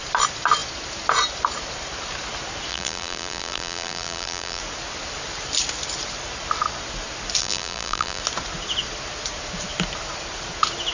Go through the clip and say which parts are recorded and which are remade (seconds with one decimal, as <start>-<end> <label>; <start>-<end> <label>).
0.0-2.7 recorded; 2.7-4.6 remade; 4.6-7.4 recorded; 7.4-8.2 remade; 8.2-10.9 recorded

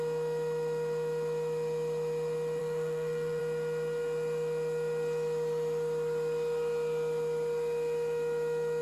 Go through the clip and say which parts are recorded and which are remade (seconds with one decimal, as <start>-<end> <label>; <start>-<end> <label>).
0.0-2.6 recorded; 2.6-3.4 remade; 3.4-8.8 recorded

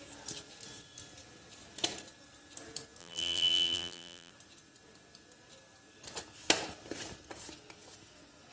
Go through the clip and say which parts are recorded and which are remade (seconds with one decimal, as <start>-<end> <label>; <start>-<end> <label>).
0.0-3.0 recorded; 3.0-4.3 remade; 4.3-8.5 recorded